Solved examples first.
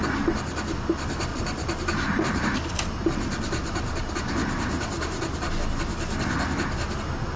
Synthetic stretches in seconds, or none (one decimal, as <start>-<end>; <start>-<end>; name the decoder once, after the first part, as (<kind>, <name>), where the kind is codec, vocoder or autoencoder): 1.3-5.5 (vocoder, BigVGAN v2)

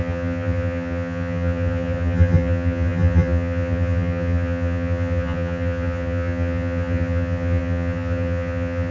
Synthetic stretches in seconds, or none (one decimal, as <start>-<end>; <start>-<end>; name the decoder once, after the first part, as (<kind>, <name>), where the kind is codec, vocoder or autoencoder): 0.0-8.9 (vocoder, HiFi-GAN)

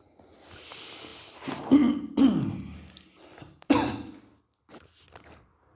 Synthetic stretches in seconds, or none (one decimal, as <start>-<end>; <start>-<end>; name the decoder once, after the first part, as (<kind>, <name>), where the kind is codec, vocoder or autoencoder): none

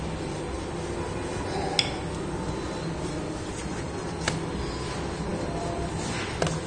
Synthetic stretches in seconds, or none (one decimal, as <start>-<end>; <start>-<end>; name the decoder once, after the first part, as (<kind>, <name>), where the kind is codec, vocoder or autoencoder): none

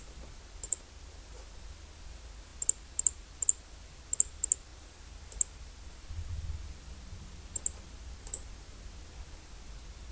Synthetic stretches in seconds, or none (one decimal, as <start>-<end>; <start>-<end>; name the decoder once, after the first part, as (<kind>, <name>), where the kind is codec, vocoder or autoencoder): none

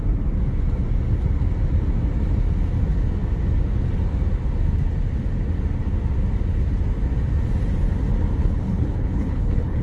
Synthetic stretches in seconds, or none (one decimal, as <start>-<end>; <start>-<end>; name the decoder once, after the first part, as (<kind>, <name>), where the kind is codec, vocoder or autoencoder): 8.4-9.8 (codec, HILCodec)